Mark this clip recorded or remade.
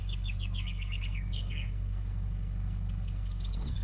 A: remade